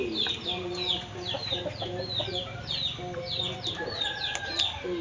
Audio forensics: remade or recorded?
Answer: recorded